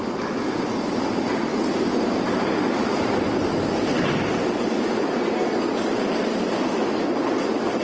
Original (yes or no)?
yes